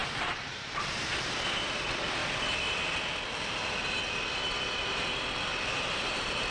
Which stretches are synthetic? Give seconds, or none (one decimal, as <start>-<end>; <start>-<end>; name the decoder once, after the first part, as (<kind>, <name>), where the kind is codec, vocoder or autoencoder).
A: 0.0-1.1 (vocoder, BigVGAN v2); 5.5-6.5

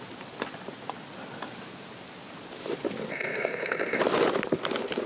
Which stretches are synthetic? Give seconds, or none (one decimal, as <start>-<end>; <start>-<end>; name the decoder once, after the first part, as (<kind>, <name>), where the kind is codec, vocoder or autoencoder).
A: 3.1-4.0 (codec, SNAC)

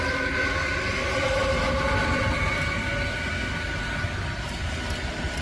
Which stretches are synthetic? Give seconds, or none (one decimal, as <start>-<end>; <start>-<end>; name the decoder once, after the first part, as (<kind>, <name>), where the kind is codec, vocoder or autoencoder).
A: 1.4-2.3 (vocoder, BigVGAN v2)

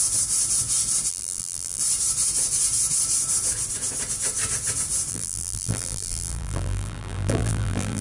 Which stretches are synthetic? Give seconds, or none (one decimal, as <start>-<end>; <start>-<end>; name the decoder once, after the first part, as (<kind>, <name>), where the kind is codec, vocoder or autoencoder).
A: 1.1-1.8 (vocoder, BigVGAN v2); 5.1-8.0